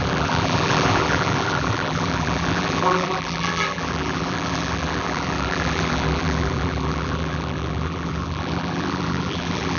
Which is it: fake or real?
fake